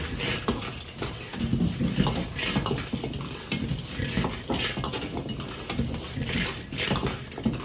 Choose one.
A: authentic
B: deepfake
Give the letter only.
A